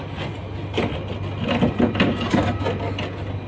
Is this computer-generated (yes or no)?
no